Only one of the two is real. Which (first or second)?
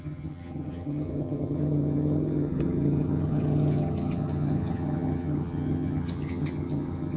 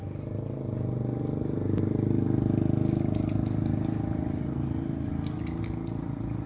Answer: second